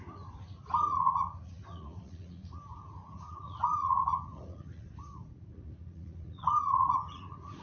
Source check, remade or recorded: remade